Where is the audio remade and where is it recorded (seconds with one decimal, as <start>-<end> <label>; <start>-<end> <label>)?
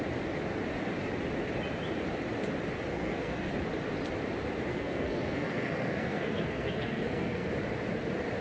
0.0-2.9 recorded; 2.9-3.5 remade; 3.5-4.7 recorded; 4.7-7.5 remade; 7.5-8.4 recorded